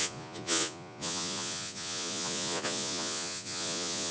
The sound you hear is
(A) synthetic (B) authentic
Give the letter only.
A